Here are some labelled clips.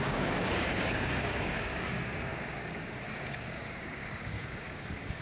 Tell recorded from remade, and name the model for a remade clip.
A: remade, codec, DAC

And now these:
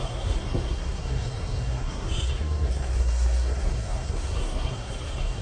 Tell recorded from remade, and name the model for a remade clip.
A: remade, codec, SNAC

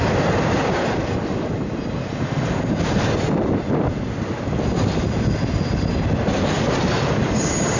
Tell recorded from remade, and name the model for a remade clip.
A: recorded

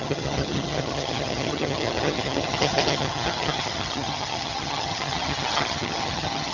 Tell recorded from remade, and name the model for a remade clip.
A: remade, vocoder, HiFi-GAN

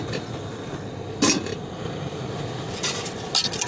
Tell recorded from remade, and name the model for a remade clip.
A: recorded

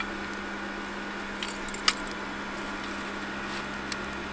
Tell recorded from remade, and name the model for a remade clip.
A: recorded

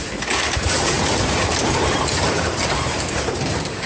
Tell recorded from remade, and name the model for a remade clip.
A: remade, vocoder, BigVGAN v2